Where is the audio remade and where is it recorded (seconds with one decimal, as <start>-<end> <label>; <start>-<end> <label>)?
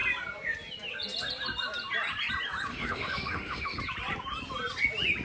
0.0-2.7 recorded; 2.7-3.8 remade; 3.8-5.2 recorded